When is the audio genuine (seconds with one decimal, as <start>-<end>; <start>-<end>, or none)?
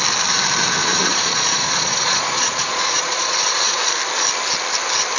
0.0-0.8; 3.9-5.2